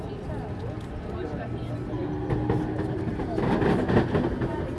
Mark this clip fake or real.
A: real